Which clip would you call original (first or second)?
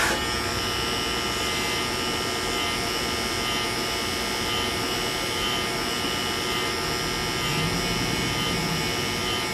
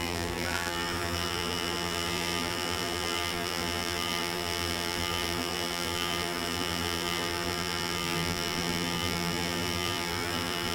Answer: first